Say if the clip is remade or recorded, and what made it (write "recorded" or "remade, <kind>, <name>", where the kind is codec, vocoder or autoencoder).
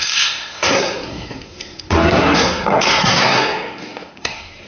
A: remade, codec, SNAC